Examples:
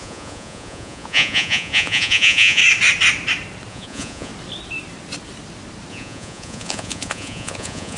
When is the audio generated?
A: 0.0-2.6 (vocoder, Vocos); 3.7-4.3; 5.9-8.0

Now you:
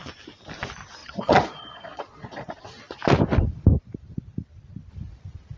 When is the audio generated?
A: 1.0-2.6 (vocoder, Vocos)

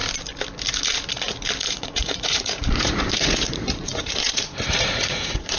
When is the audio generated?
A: 1.6-5.6 (vocoder, Vocos)

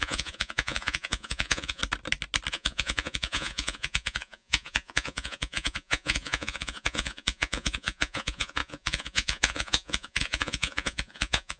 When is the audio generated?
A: 0.0-1.8 (vocoder, Vocos); 2.5-11.6

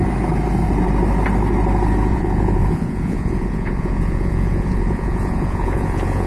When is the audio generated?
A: 2.1-6.3 (vocoder, Vocos)

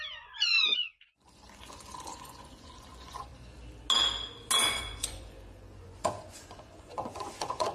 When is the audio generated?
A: 0.0-3.3 (vocoder, Vocos); 4.6-7.7

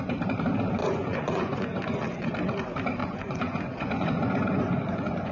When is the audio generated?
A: 0.8-2.3 (vocoder, Vocos); 3.0-5.3